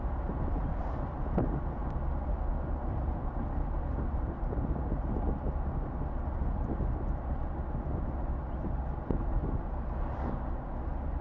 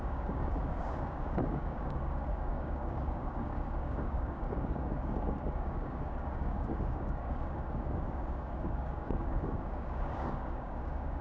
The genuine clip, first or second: first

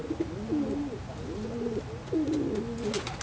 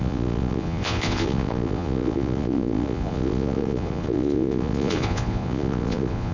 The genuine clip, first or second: first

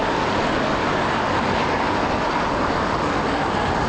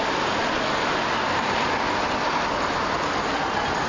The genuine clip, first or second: second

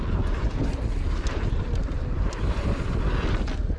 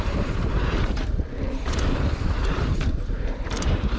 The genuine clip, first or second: first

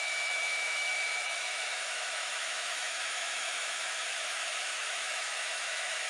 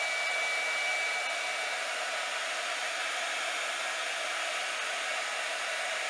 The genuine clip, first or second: second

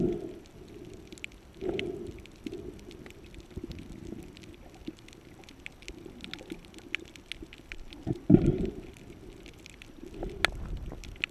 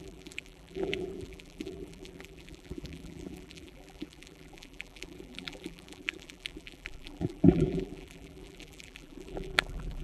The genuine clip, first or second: first